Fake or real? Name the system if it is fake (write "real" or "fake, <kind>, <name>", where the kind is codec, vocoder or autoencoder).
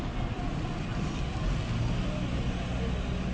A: real